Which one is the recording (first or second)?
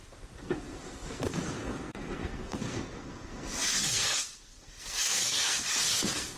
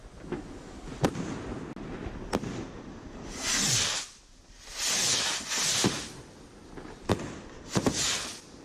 second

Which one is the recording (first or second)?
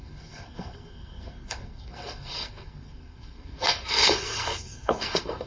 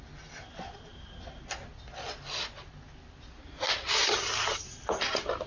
second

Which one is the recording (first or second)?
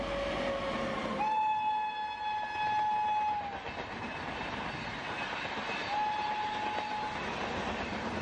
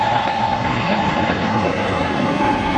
first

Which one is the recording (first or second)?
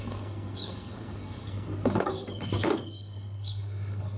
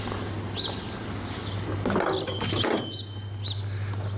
second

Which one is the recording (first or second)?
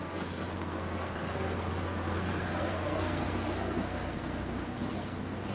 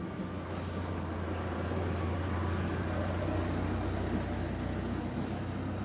second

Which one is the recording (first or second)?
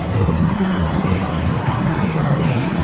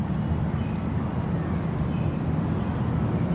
second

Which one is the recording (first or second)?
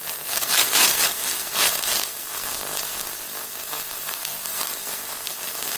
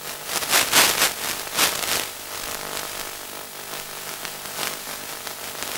second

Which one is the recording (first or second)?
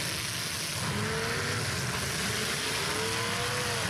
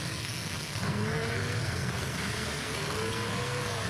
first